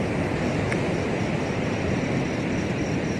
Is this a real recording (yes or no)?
yes